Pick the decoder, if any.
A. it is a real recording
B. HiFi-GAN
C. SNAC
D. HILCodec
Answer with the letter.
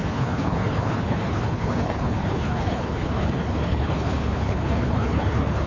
D